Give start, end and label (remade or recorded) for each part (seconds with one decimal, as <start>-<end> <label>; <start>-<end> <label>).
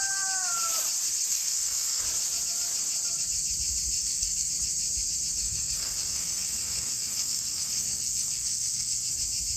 0.0-1.3 recorded; 1.3-2.0 remade; 2.0-4.0 recorded; 4.0-4.5 remade; 4.5-5.4 recorded; 5.4-9.1 remade; 9.1-9.6 recorded